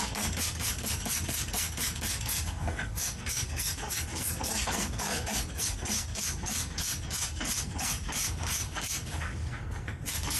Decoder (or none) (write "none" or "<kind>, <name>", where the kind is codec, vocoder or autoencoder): codec, SNAC